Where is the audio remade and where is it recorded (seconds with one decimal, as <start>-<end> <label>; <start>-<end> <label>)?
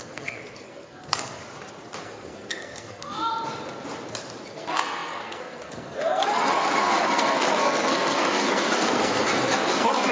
0.0-1.4 remade; 1.4-2.0 recorded; 2.0-3.3 remade; 3.3-4.5 recorded; 4.5-10.1 remade